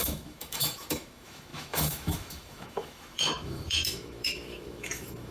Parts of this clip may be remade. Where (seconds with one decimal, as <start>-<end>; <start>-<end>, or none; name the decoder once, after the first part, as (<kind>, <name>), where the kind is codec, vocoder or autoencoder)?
0.0-5.3 (autoencoder, DAC-VAE)